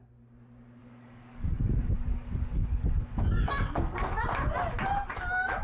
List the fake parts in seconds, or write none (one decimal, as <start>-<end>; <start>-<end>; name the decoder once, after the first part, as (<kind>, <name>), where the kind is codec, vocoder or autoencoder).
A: 0.8-4.2 (codec, DAC)